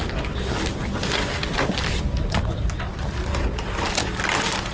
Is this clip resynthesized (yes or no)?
no